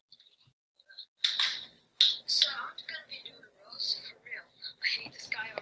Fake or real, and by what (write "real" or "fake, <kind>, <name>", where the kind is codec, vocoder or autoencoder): real